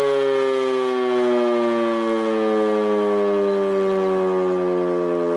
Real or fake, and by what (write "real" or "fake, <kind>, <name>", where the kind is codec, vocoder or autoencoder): real